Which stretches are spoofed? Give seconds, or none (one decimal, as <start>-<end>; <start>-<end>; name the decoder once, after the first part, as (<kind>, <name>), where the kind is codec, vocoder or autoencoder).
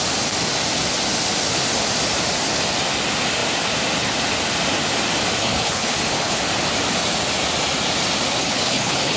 5.4-6.4 (codec, HILCodec); 8.4-9.2